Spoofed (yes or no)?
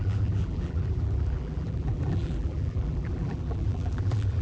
yes